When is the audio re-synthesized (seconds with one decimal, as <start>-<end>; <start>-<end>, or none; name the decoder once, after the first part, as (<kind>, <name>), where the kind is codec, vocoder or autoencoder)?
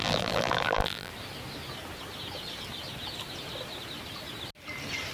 0.0-1.1 (vocoder, BigVGAN v2)